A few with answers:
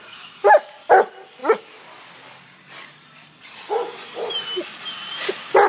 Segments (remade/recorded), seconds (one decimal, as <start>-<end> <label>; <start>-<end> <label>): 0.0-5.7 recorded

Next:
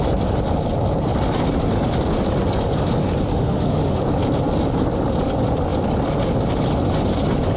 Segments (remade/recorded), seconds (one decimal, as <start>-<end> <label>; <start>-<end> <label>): 0.0-3.3 recorded; 3.3-4.0 remade; 4.0-7.6 recorded

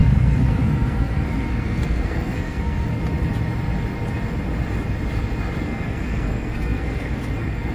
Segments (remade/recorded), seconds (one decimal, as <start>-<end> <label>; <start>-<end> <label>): 0.0-3.0 remade; 3.0-5.6 recorded; 5.6-7.7 remade

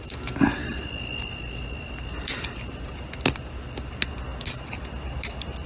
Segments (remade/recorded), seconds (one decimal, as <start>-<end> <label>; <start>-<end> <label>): 0.0-5.7 recorded

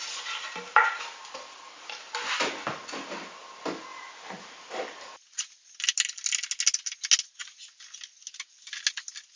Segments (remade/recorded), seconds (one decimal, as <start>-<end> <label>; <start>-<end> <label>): 0.0-9.4 recorded

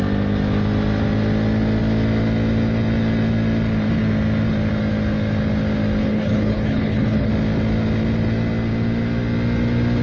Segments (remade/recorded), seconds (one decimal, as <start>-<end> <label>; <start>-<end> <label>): 0.0-6.0 recorded; 6.0-7.3 remade; 7.3-10.0 recorded